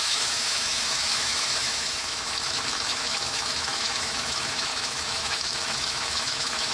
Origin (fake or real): fake